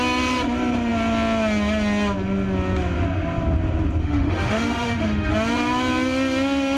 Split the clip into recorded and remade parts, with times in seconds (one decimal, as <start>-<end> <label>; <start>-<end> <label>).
0.0-4.0 recorded; 4.0-5.3 remade; 5.3-6.8 recorded